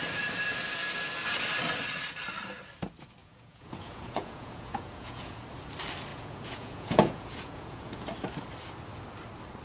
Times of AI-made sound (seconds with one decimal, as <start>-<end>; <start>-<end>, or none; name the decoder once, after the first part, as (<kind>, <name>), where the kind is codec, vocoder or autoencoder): 3.2-5.4 (vocoder, Vocos); 6.1-8.1